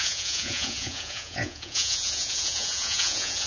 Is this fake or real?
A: fake